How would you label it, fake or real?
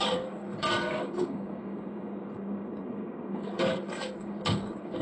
fake